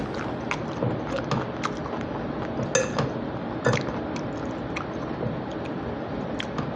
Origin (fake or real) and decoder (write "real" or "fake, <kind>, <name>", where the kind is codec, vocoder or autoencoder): real